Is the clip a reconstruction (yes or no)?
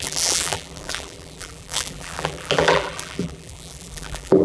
yes